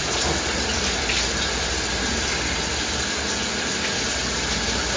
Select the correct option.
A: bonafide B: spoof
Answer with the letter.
B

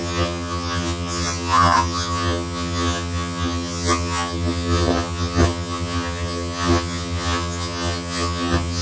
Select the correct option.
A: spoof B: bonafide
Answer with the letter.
A